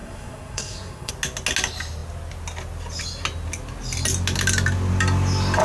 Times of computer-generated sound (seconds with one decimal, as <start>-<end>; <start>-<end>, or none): 0.0-1.1